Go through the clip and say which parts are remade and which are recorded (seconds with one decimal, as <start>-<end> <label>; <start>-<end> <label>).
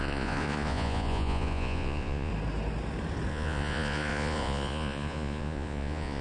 0.0-2.3 remade; 2.3-3.3 recorded; 3.3-6.2 remade